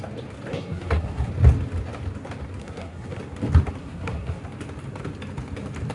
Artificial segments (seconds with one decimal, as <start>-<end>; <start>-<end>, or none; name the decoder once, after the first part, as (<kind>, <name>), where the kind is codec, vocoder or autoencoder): 0.5-1.3 (codec, SNAC); 2.6-3.2; 3.8-4.4